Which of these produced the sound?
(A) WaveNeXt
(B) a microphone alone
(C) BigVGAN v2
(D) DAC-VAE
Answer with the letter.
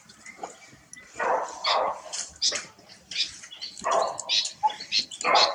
B